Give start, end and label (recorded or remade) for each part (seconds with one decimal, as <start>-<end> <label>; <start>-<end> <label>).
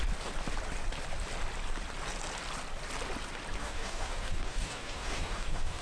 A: 0.0-3.6 recorded; 3.6-5.8 remade